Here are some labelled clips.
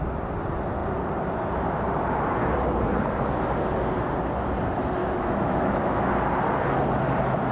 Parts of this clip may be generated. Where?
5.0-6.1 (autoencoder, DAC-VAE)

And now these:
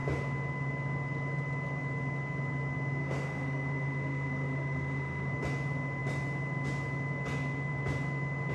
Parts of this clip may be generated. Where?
3.0-5.3 (autoencoder, DAC-VAE)

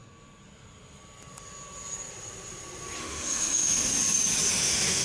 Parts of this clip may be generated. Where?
3.0-3.9 (autoencoder, DAC-VAE); 4.5-5.0

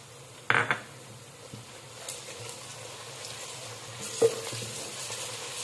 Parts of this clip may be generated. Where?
none

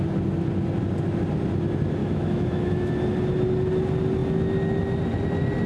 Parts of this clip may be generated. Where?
2.0-2.9 (autoencoder, DAC-VAE)

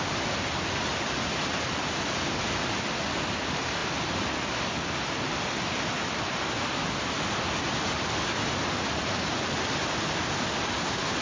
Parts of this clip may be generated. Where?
none